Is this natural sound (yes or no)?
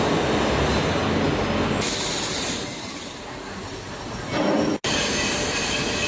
yes